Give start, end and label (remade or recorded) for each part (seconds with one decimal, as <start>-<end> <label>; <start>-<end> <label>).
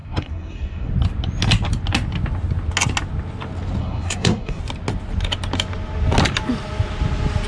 0.0-0.9 remade; 0.9-3.8 recorded; 3.8-4.6 remade; 4.6-7.5 recorded